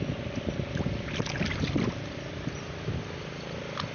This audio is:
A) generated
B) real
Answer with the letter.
B